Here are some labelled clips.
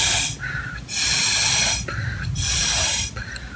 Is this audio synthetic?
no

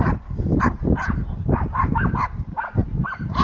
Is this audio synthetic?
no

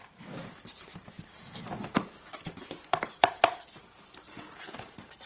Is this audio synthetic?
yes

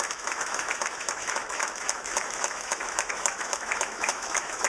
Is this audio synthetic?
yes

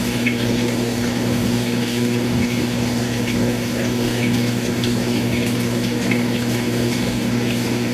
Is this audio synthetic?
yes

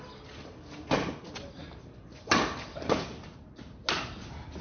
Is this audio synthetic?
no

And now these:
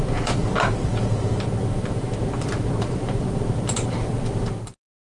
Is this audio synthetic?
no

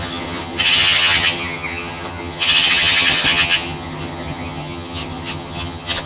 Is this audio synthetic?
yes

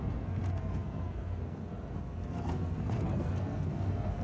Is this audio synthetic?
yes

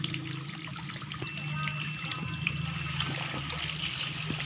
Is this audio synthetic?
no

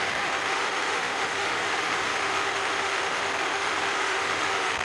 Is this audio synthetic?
yes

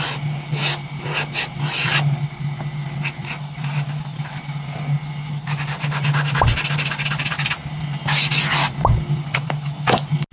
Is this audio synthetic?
no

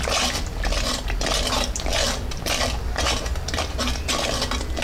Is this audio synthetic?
no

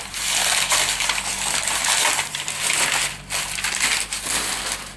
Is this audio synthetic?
no